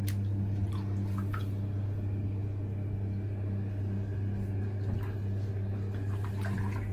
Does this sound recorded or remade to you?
recorded